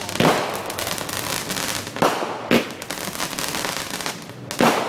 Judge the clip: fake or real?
real